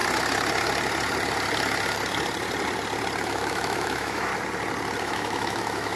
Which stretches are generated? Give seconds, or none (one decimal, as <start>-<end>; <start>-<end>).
3.2-4.3; 5.0-6.0

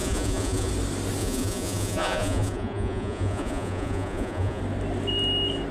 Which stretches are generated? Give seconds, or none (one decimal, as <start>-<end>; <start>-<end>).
0.0-0.7; 1.2-4.6

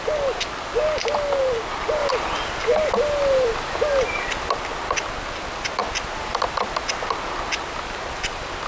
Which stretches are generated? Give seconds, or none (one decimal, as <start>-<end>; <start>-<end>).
none

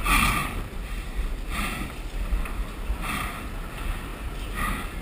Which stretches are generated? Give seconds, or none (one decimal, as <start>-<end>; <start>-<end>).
none

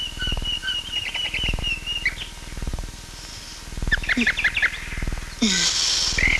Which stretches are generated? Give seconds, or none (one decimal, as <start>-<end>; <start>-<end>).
0.6-1.6; 2.7-3.3

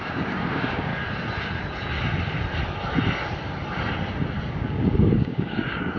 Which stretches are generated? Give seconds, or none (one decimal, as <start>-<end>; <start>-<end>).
0.0-0.9; 4.5-6.0

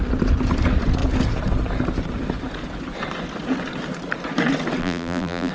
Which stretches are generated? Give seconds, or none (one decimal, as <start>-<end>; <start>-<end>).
4.8-5.5

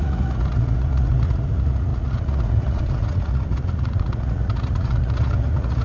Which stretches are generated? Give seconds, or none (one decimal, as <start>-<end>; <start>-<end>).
0.0-5.8